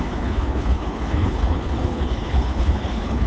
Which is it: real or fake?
fake